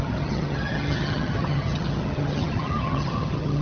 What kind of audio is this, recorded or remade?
remade